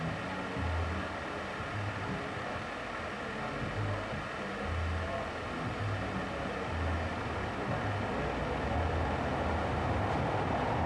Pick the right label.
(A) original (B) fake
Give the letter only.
A